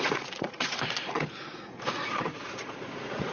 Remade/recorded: remade